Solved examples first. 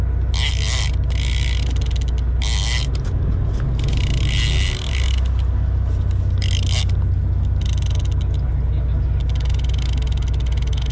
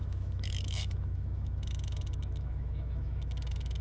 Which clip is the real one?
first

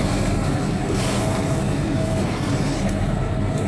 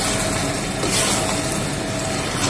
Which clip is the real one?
second